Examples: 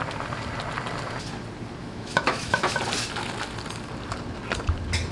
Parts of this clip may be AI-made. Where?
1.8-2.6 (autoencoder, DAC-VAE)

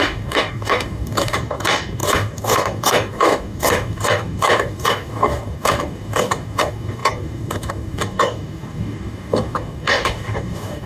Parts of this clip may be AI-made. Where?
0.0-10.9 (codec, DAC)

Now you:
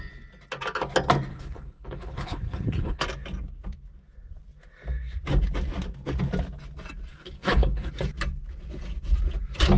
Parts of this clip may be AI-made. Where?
1.3-3.0 (codec, HILCodec); 7.1-7.9

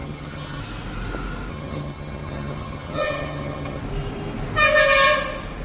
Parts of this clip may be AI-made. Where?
0.0-0.6 (vocoder, HiFi-GAN); 1.5-3.8

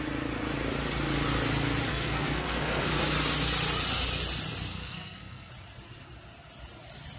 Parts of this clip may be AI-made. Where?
1.9-2.8 (codec, SNAC); 4.7-5.5